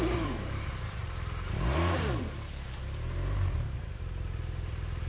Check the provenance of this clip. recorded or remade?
remade